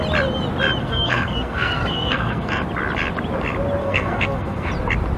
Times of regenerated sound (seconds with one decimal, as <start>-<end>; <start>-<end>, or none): 0.8-2.6; 3.8-4.7